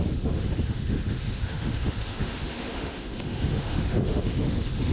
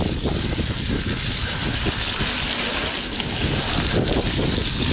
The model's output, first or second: first